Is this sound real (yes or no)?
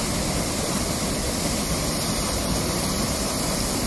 no